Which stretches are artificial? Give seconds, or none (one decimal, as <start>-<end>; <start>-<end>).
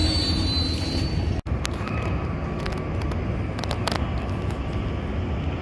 none